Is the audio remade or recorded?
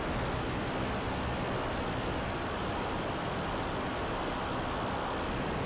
recorded